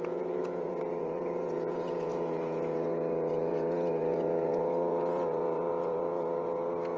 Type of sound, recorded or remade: remade